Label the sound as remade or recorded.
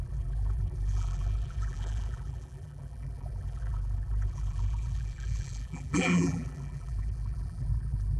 remade